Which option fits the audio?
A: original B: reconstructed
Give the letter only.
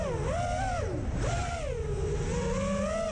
A